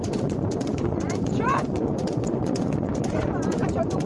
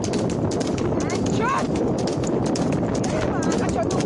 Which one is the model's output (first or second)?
first